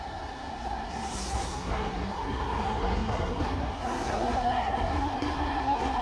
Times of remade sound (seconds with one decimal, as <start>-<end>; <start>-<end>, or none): 0.0-6.0